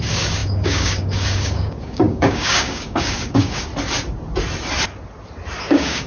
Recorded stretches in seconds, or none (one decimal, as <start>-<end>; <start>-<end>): 3.7-5.6